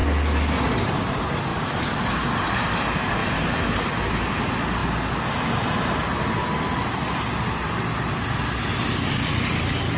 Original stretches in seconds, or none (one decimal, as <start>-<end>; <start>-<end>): 0.0-1.5; 2.1-10.0